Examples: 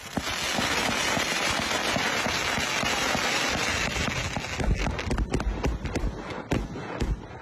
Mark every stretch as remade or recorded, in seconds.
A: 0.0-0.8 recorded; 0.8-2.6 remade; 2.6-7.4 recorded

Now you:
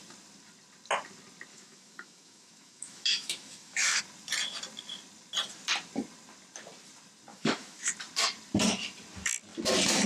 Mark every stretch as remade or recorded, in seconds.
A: 0.0-1.5 recorded; 1.5-4.0 remade; 4.0-7.3 recorded; 7.3-7.9 remade; 7.9-10.1 recorded

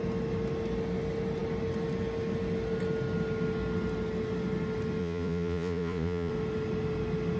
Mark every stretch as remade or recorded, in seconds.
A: 0.0-5.0 recorded; 5.0-6.3 remade; 6.3-7.4 recorded